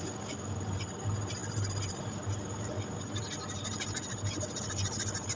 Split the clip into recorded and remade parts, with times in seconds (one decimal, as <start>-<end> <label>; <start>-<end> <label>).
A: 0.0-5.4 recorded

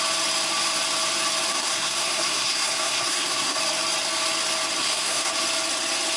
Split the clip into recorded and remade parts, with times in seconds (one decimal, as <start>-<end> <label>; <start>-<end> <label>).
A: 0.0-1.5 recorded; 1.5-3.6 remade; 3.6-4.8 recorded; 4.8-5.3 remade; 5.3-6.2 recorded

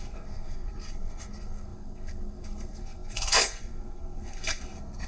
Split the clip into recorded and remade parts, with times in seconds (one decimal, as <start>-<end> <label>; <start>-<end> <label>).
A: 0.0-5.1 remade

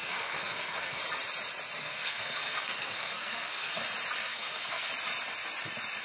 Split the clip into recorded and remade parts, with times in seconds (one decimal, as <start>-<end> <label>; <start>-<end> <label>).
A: 0.0-1.0 remade; 1.0-1.8 recorded; 1.8-3.7 remade; 3.7-4.2 recorded; 4.2-4.9 remade; 4.9-6.0 recorded

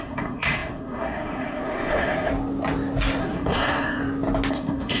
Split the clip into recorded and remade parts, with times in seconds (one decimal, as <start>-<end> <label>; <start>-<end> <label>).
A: 0.0-2.3 remade; 2.3-3.2 recorded; 3.2-4.0 remade; 4.0-4.5 recorded; 4.5-5.0 remade